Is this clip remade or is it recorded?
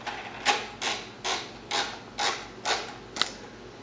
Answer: recorded